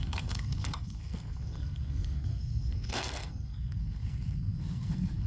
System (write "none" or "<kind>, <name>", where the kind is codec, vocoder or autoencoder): codec, SNAC